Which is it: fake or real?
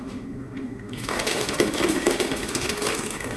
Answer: fake